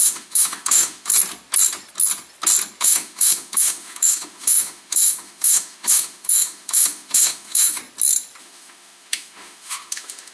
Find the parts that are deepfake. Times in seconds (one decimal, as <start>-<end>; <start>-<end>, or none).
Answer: 0.0-1.1; 2.8-7.8; 8.4-10.3